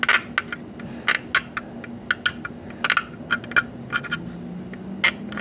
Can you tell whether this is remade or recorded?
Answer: recorded